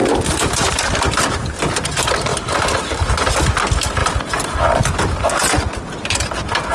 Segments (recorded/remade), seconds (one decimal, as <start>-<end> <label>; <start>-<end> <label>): 0.0-1.2 remade; 1.2-6.7 recorded